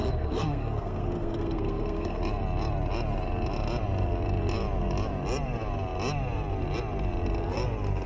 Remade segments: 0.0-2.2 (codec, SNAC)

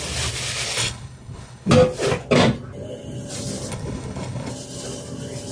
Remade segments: 0.8-1.7 (codec, HILCodec); 3.7-4.5

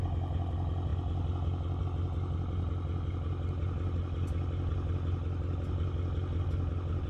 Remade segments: none

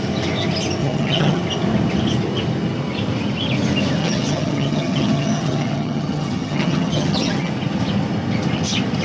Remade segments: 0.8-1.4 (vocoder, HiFi-GAN); 4.0-7.5

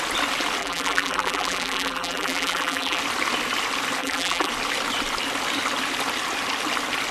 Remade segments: 0.6-3.0 (vocoder, BigVGAN v2); 4.0-4.5

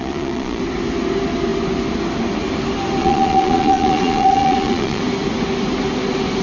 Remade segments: 0.0-0.6 (vocoder, Vocos); 3.0-5.0